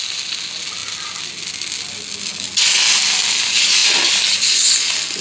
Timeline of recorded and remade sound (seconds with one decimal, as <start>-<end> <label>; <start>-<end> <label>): 0.0-5.2 recorded